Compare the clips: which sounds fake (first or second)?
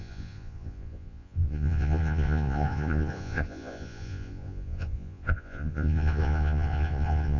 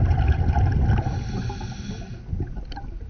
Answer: first